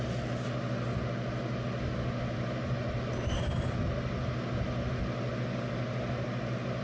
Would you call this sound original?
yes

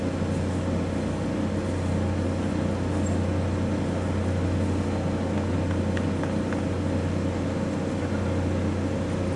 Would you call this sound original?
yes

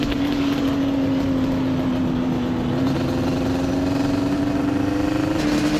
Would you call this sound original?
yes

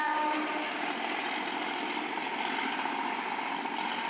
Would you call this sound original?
yes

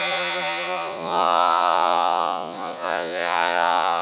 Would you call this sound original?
no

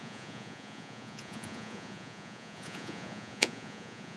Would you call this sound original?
no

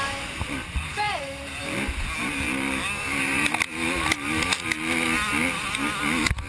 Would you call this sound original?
yes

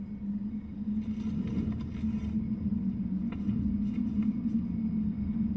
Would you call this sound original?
yes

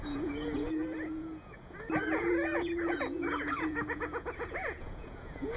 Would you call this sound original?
no